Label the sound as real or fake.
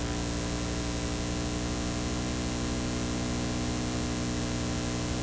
real